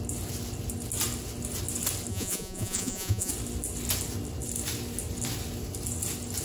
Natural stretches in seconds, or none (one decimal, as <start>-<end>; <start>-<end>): 0.0-2.1; 3.3-6.4